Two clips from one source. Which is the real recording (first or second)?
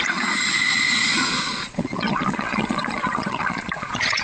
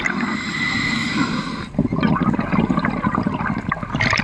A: second